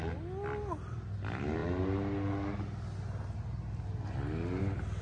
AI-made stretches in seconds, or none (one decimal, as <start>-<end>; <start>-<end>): none